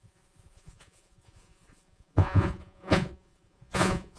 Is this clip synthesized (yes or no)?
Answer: yes